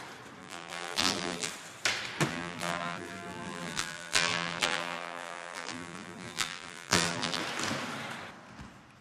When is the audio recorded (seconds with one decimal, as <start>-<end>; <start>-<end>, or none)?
0.0-0.4; 1.5-2.3; 7.4-9.0